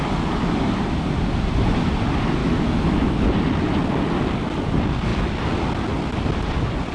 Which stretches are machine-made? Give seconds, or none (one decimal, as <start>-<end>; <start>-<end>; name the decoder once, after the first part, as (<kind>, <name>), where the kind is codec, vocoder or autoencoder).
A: 2.4-3.1 (autoencoder, DAC-VAE)